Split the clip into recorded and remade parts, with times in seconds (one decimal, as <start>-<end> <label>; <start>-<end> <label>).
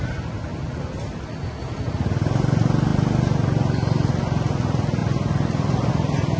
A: 0.0-5.0 recorded; 5.0-5.9 remade; 5.9-6.4 recorded